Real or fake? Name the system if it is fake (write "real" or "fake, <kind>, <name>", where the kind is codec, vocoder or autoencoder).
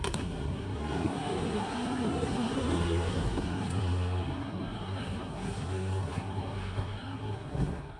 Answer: fake, codec, SNAC